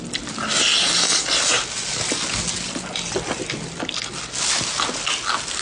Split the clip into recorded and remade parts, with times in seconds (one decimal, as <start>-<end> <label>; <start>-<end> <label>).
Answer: 0.0-5.6 recorded